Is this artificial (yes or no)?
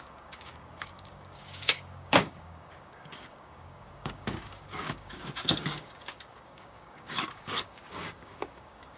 yes